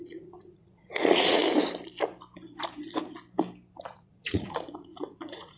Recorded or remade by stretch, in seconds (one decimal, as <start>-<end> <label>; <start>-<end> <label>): 0.0-1.4 remade; 1.4-3.7 recorded; 3.7-5.6 remade